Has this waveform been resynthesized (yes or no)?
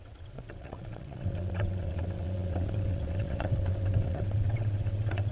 yes